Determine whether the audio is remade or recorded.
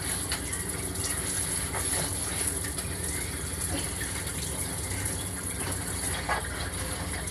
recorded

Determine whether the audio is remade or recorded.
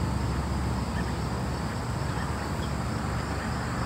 recorded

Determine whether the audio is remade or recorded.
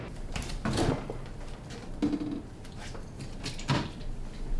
recorded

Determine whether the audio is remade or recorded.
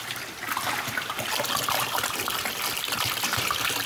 recorded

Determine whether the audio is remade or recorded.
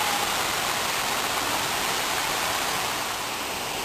recorded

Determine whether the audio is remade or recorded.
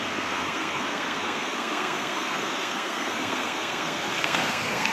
remade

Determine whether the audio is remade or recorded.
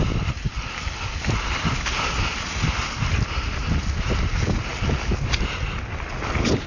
recorded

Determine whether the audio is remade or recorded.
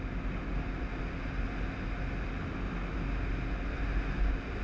recorded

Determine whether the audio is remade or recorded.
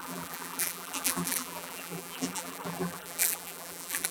remade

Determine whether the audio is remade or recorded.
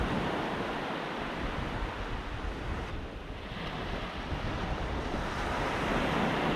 recorded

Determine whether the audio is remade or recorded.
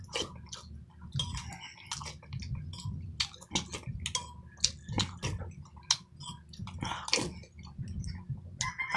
recorded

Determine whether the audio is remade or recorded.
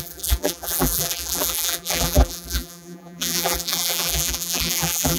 remade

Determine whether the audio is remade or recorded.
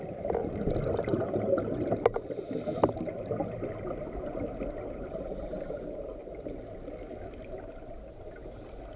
recorded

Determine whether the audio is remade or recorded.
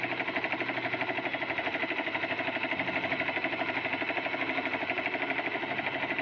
recorded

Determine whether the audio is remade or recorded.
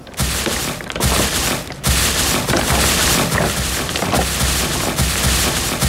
recorded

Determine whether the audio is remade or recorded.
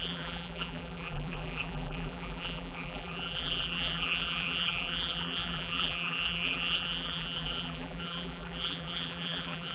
remade